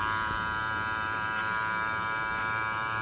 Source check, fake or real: fake